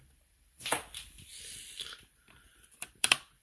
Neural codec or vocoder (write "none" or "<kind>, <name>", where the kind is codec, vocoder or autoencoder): vocoder, BigVGAN v2